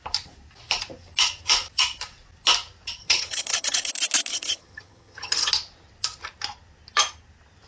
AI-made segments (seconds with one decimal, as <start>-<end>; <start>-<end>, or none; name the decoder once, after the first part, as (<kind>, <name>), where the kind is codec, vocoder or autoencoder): 3.0-3.9 (vocoder, HiFi-GAN); 4.3-5.5